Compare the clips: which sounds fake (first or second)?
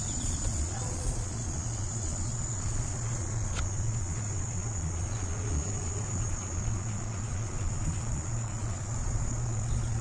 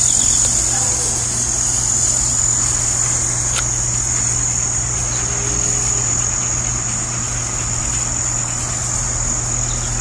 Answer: first